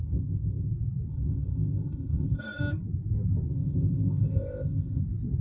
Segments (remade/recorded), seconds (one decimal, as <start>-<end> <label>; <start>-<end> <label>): 0.0-0.7 remade; 0.7-1.1 recorded; 1.1-2.6 remade; 2.6-3.5 recorded; 3.5-5.0 remade; 5.0-5.4 recorded